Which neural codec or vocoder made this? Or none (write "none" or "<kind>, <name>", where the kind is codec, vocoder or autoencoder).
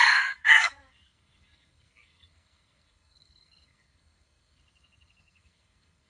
codec, SNAC